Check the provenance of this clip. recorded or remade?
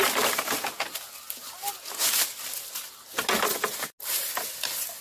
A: recorded